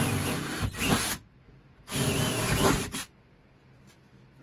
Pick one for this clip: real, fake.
real